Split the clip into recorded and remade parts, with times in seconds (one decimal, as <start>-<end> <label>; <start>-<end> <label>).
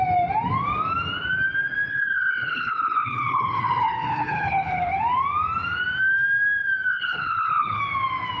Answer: 0.0-1.9 recorded; 1.9-4.9 remade; 4.9-6.9 recorded; 6.9-7.8 remade; 7.8-8.4 recorded